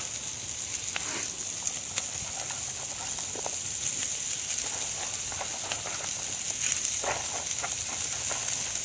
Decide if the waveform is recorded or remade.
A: recorded